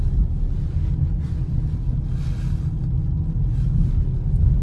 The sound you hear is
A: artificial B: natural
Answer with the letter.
B